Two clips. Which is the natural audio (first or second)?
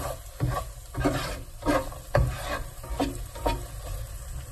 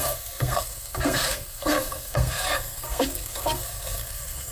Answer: first